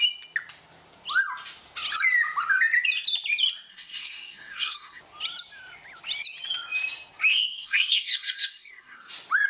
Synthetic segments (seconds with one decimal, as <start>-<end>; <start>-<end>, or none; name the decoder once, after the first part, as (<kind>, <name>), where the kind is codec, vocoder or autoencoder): 3.7-5.0 (codec, SNAC); 7.3-9.1